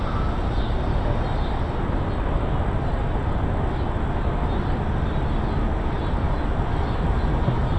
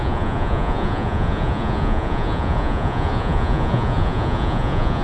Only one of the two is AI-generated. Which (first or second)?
second